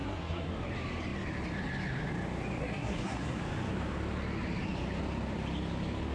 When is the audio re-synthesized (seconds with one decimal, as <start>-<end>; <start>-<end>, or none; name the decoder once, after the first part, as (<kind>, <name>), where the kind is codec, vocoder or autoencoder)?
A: 0.0-0.5 (codec, SNAC); 2.6-3.4